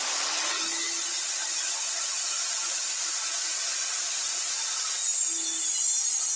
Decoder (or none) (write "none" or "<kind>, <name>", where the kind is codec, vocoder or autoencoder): none